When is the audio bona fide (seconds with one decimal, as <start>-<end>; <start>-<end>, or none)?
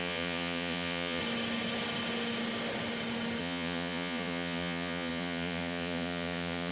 1.2-3.4